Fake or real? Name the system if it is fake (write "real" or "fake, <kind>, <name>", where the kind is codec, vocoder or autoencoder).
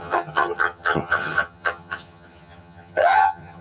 fake, vocoder, HiFi-GAN